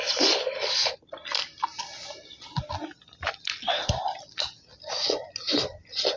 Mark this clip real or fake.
real